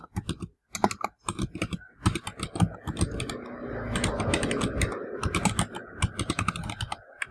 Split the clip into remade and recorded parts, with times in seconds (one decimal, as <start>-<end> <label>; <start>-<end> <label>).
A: 0.0-7.3 recorded